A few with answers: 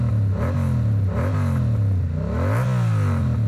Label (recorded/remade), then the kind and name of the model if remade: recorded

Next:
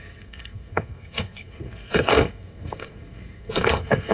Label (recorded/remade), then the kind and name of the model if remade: remade, codec, SNAC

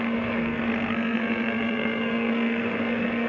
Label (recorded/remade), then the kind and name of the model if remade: remade, codec, SNAC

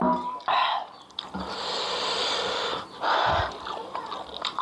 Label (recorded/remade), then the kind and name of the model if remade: recorded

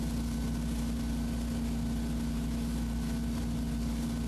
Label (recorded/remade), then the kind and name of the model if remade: recorded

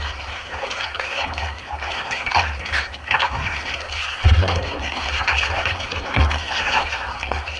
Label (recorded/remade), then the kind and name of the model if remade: remade, codec, SNAC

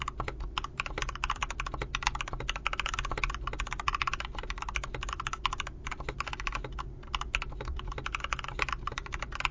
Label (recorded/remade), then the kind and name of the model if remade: recorded